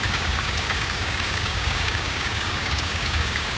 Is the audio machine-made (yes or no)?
yes